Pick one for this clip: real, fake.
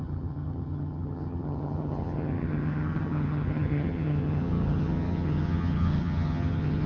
fake